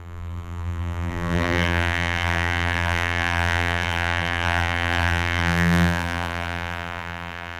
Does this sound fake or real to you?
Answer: fake